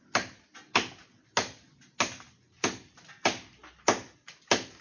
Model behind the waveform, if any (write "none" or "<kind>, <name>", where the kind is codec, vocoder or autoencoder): none